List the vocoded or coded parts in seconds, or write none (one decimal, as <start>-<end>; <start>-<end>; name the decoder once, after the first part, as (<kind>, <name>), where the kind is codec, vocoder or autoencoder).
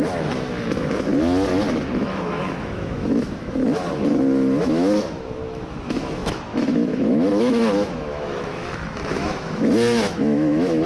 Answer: 0.0-1.1 (autoencoder, DAC-VAE); 1.9-3.6; 4.6-10.9